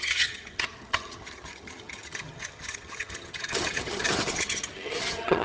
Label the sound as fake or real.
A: fake